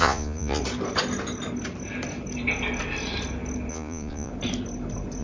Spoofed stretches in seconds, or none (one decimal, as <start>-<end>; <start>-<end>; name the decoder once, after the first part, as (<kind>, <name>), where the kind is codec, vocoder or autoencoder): 0.0-0.6 (vocoder, Vocos); 3.7-4.3